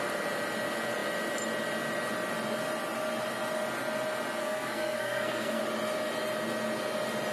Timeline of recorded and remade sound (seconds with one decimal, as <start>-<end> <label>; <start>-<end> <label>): 0.0-4.4 recorded; 4.4-5.6 remade; 5.6-7.3 recorded